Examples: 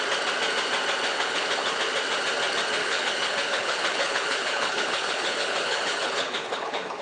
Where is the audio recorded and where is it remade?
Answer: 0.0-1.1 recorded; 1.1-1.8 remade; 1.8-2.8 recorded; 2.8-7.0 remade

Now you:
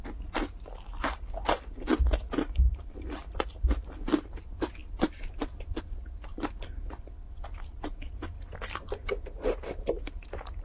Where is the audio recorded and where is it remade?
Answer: 0.0-10.6 recorded

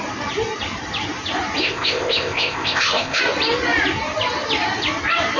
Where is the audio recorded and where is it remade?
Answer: 0.0-1.6 recorded; 1.6-3.2 remade; 3.2-5.4 recorded